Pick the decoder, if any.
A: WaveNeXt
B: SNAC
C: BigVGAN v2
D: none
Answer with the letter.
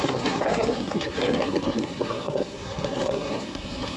B